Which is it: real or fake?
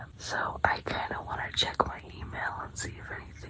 fake